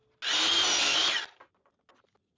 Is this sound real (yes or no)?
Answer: yes